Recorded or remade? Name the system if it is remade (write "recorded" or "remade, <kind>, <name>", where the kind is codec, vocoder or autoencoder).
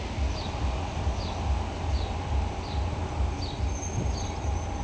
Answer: recorded